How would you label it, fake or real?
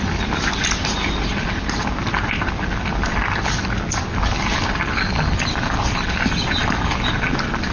real